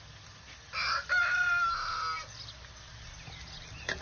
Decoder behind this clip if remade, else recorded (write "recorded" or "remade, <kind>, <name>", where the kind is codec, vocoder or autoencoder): recorded